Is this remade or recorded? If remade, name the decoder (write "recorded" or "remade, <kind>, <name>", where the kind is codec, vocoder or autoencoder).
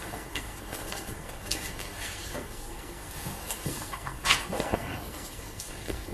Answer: remade, codec, SNAC